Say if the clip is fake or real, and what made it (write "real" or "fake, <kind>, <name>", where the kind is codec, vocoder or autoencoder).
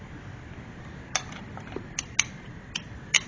real